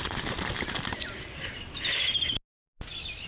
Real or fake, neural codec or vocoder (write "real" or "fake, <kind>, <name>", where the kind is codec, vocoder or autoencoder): real